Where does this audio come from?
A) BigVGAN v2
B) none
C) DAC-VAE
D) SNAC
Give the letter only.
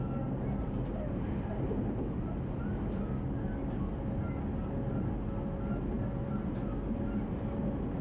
B